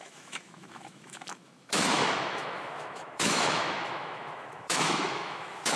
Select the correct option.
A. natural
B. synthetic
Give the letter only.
B